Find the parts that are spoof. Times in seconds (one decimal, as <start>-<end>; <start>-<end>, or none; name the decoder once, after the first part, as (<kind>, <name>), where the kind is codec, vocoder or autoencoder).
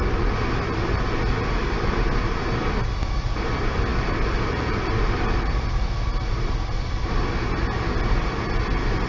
none